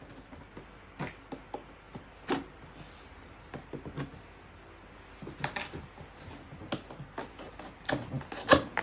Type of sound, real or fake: real